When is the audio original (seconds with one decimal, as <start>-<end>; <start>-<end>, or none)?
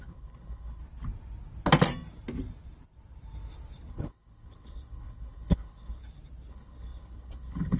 0.8-3.9; 6.0-6.5